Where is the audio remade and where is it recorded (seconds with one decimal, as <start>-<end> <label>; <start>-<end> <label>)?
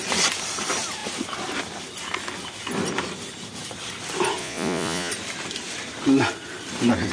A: 0.0-4.4 recorded; 4.4-5.1 remade; 5.1-7.1 recorded